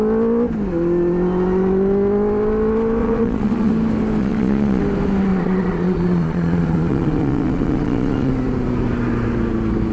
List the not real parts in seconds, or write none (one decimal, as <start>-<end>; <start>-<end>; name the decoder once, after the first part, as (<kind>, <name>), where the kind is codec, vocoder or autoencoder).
3.0-3.7 (vocoder, Vocos); 4.2-4.8; 5.3-8.3